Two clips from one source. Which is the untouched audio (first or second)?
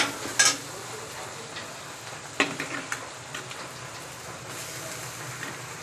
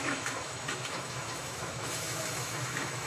first